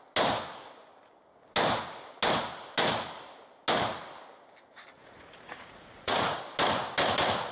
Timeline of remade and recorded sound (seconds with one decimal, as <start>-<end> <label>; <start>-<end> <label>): 0.0-5.0 recorded; 5.0-6.4 remade; 6.4-7.5 recorded